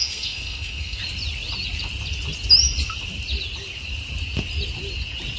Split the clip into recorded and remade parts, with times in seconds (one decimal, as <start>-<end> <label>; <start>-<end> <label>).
0.0-1.0 remade; 1.0-5.4 recorded